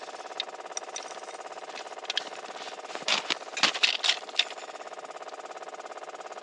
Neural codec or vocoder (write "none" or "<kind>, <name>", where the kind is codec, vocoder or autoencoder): none